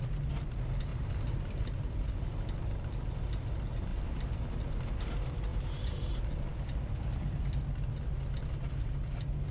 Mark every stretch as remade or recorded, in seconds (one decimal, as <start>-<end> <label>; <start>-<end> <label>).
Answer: 0.0-0.9 recorded; 0.9-1.9 remade; 1.9-3.9 recorded; 3.9-4.4 remade; 4.4-5.5 recorded; 5.5-6.5 remade; 6.5-9.5 recorded

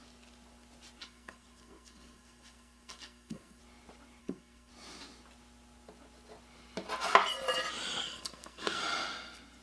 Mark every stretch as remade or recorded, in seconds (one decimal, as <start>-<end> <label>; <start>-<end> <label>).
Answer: 0.0-1.0 recorded; 1.0-3.6 remade; 3.6-4.2 recorded; 4.2-4.7 remade; 4.7-8.0 recorded; 8.0-8.8 remade; 8.8-9.6 recorded

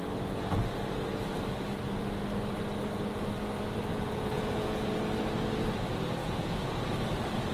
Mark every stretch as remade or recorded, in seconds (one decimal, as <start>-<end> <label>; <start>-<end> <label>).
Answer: 0.0-3.9 recorded; 3.9-4.8 remade; 4.8-6.2 recorded; 6.2-6.9 remade; 6.9-7.5 recorded